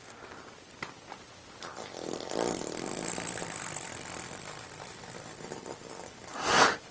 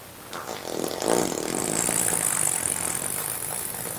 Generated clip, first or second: first